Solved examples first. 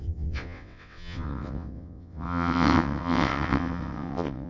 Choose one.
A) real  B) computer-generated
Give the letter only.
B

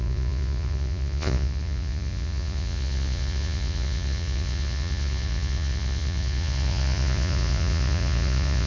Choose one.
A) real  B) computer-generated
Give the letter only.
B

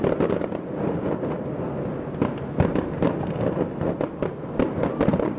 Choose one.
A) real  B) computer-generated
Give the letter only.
A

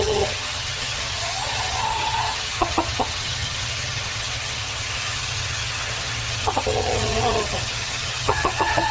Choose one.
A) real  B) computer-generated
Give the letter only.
B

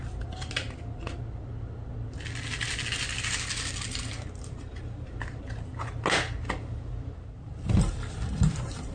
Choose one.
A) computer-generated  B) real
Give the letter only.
B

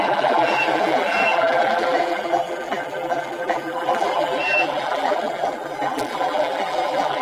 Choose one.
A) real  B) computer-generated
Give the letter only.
B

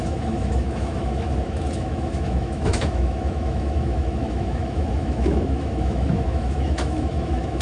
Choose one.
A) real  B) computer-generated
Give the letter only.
B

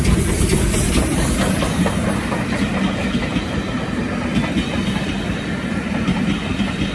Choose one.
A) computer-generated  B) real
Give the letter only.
B